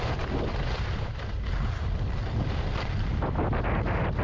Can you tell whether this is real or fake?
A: real